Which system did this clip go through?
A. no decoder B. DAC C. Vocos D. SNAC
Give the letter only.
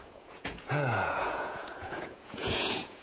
C